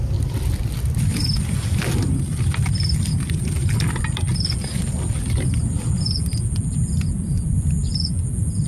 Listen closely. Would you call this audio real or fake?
real